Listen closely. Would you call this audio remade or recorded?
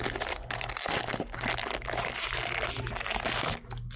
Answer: recorded